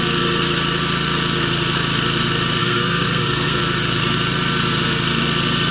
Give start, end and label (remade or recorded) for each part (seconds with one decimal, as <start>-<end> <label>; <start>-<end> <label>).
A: 0.0-2.6 recorded; 2.6-3.6 remade; 3.6-5.7 recorded